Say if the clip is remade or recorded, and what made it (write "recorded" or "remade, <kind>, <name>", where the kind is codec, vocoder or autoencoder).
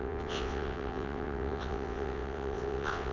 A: remade, vocoder, WaveNeXt